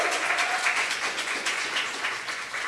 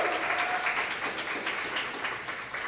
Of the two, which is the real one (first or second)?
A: second